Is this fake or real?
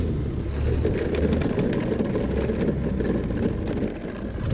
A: real